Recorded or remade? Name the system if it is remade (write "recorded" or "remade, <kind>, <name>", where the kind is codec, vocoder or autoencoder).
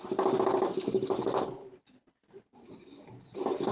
recorded